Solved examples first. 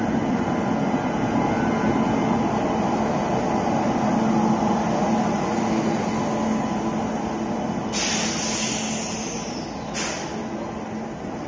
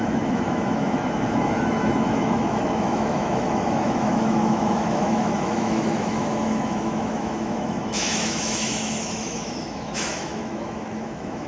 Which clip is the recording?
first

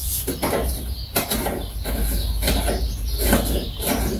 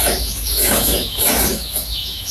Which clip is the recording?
first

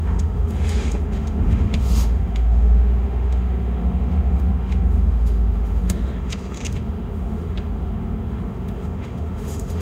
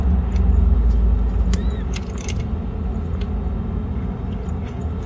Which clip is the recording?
second